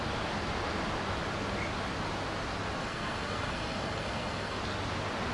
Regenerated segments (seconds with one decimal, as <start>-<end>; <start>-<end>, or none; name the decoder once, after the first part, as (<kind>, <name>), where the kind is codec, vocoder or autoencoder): 2.8-4.6 (codec, SNAC)